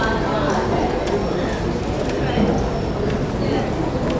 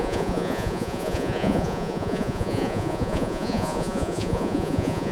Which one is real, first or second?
first